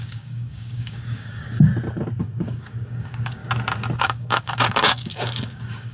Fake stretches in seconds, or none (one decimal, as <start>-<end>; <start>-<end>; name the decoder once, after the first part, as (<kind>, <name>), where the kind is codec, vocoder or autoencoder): 0.0-1.7 (codec, DAC); 2.2-3.4; 4.0-5.9